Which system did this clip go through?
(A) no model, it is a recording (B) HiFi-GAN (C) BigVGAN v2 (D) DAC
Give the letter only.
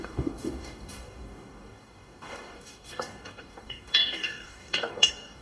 D